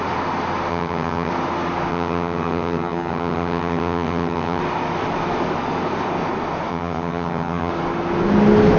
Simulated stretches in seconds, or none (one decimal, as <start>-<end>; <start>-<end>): 0.7-1.3; 1.9-4.6; 6.7-7.7